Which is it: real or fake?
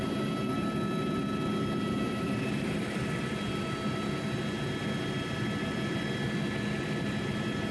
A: real